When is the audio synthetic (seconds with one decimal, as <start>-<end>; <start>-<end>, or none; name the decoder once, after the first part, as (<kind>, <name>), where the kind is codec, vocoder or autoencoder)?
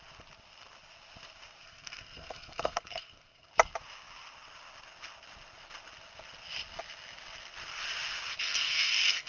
1.6-3.5 (codec, SNAC); 8.4-9.3